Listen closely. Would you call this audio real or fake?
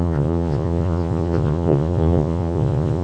fake